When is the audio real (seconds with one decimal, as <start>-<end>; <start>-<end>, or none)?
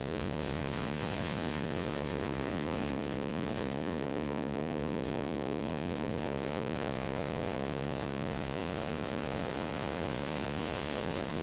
none